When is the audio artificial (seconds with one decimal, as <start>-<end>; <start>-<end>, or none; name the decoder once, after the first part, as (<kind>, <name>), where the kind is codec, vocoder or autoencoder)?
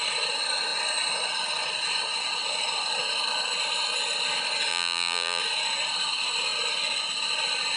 4.7-5.4 (vocoder, BigVGAN v2)